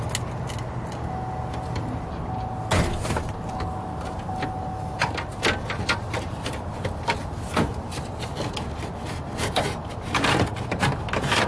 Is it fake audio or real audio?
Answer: real